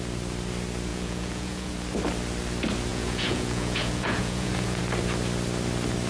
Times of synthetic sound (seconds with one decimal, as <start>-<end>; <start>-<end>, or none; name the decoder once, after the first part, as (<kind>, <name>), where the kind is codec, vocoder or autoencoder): 0.9-1.7 (vocoder, Vocos); 2.9-4.8